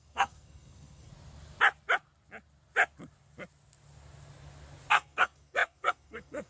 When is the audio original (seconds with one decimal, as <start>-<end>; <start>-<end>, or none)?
1.1-4.9